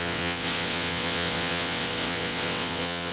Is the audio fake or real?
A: fake